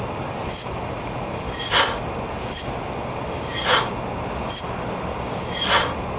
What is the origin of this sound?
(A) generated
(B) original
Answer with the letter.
B